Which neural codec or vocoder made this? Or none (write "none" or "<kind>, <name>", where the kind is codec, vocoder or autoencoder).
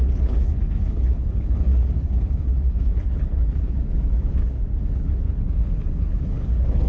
codec, HILCodec